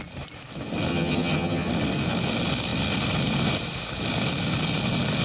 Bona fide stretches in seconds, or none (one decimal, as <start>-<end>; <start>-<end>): 0.0-0.9; 1.7-5.2